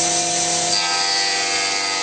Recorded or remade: recorded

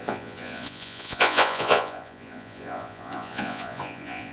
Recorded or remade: remade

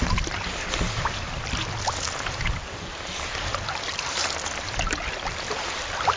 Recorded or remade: recorded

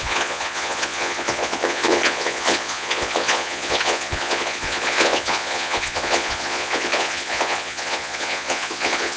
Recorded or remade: remade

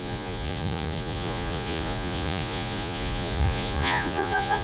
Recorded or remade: remade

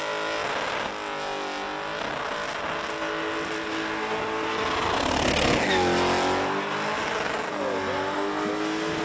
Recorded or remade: recorded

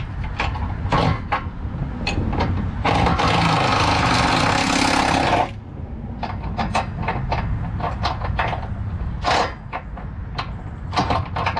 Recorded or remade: recorded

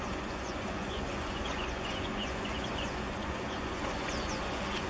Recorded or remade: remade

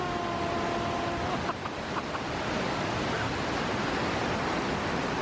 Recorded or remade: recorded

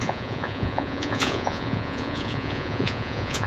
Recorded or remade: remade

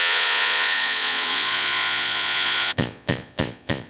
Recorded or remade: remade